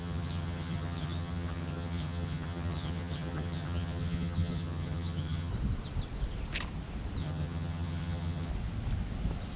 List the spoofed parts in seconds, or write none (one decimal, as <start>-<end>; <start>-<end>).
0.0-5.5; 7.2-8.5